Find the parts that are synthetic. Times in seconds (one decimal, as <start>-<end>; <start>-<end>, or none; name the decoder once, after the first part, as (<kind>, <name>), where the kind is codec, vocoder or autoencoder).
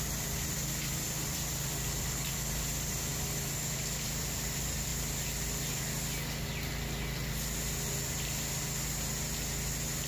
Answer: 0.0-3.1 (vocoder, BigVGAN v2); 3.6-4.9